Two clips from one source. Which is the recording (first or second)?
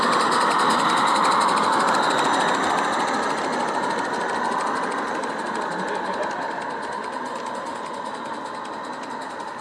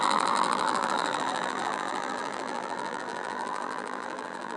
first